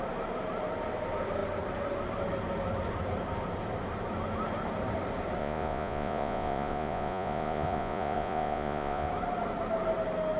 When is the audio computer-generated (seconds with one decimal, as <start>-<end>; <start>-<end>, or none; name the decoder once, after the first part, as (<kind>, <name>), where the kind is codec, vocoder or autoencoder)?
5.4-9.1 (vocoder, Vocos)